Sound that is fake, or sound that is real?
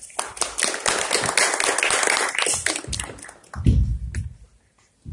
real